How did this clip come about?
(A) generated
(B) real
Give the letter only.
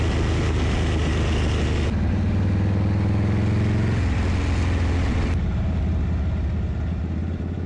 B